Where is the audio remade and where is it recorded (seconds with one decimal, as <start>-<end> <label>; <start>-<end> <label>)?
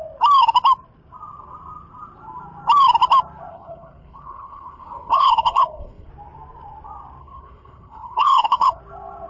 0.0-3.5 recorded; 3.5-6.1 remade; 6.1-7.2 recorded; 7.2-8.8 remade; 8.8-9.3 recorded